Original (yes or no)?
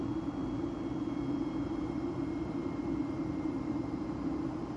no